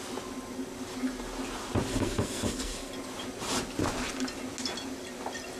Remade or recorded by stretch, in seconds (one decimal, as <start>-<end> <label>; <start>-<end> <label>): 0.0-1.9 recorded; 1.9-2.9 remade; 2.9-5.6 recorded